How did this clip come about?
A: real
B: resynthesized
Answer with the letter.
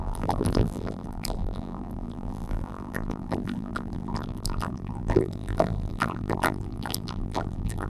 B